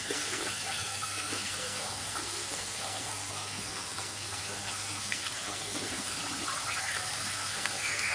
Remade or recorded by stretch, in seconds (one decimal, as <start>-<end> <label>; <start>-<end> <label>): 0.0-6.2 remade; 6.2-6.8 recorded; 6.8-8.1 remade